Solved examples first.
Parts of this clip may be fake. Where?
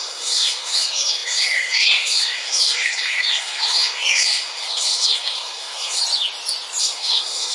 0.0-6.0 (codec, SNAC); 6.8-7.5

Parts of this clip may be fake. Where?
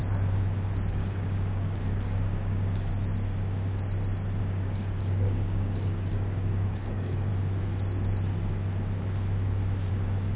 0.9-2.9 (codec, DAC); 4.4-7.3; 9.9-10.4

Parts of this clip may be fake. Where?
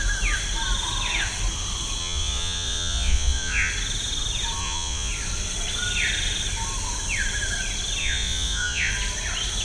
2.0-3.7 (vocoder, Vocos); 4.6-5.1; 8.0-8.9